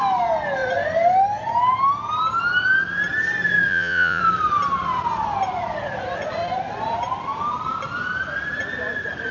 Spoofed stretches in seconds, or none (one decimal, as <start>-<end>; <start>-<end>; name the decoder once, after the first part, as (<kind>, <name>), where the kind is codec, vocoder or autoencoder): 3.7-4.2 (vocoder, Vocos)

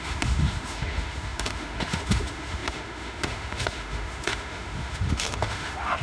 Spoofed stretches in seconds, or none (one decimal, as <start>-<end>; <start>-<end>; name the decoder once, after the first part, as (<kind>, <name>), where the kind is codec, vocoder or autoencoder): 0.0-6.0 (autoencoder, DAC-VAE)